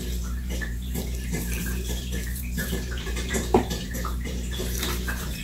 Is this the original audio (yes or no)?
no